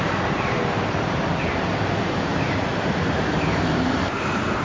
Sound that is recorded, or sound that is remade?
remade